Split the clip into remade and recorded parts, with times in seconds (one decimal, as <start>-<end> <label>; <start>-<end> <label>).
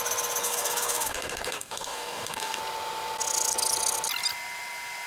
0.0-0.4 recorded; 0.4-2.6 remade; 2.6-5.1 recorded